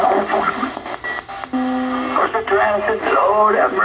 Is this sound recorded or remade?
recorded